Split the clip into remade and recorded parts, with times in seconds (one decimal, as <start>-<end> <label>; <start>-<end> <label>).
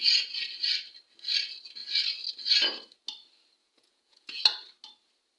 0.0-3.6 recorded; 3.6-4.4 remade; 4.4-5.4 recorded